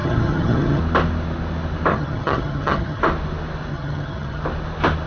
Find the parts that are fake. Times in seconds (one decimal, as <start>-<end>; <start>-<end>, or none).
0.0-0.8; 1.9-3.0; 3.7-4.4